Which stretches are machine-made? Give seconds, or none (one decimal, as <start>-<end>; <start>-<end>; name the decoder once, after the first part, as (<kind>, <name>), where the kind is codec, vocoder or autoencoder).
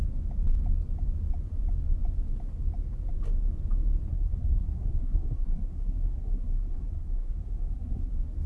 4.1-8.1 (codec, SNAC)